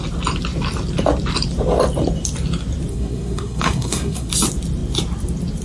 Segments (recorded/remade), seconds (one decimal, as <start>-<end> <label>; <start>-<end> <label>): 0.0-2.9 recorded; 2.9-4.3 remade; 4.3-5.6 recorded